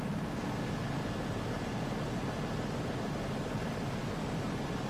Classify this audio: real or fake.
real